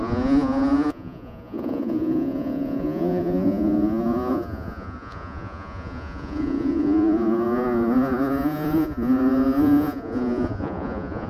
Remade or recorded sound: remade